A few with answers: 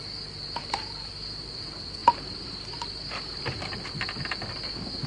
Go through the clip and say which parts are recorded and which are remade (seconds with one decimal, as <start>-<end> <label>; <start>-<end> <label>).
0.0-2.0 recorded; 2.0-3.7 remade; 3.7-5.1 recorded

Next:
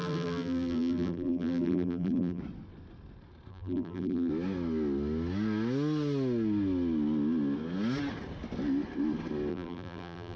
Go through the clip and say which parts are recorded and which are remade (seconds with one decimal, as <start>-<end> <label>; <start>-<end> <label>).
0.0-2.4 remade; 2.4-3.5 recorded; 3.5-4.3 remade; 4.3-9.5 recorded; 9.5-10.4 remade

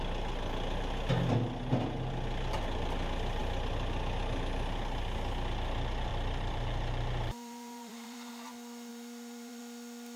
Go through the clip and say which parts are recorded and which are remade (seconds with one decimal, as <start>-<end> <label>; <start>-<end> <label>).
0.0-6.1 recorded; 6.1-8.3 remade; 8.3-8.9 recorded; 8.9-9.6 remade; 9.6-10.2 recorded

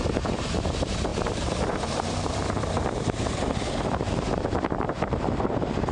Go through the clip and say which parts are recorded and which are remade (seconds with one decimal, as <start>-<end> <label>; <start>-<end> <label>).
0.0-5.9 remade